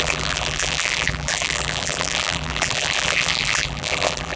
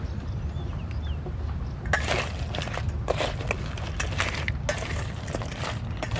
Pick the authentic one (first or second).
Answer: second